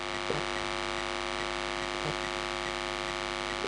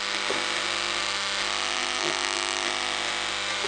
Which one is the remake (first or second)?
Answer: second